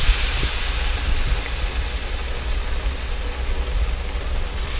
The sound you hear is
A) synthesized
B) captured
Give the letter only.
A